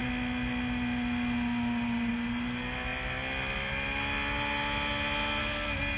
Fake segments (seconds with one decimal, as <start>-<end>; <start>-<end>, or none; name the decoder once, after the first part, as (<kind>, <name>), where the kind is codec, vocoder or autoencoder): none